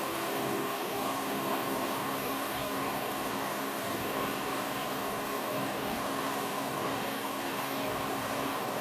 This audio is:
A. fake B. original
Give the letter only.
A